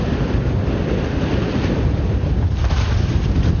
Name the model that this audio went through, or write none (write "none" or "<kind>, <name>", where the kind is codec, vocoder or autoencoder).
none